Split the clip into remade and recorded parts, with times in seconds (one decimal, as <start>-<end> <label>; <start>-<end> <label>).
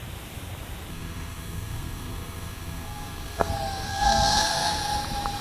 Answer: 0.0-0.9 recorded; 0.9-3.5 remade; 3.5-3.9 recorded; 3.9-4.8 remade; 4.8-5.4 recorded